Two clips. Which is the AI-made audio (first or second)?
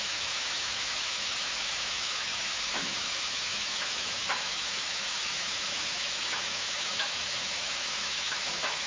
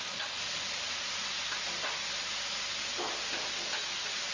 first